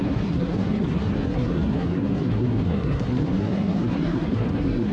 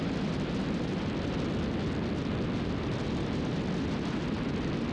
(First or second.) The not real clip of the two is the first